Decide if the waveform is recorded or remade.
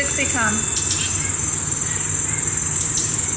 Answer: recorded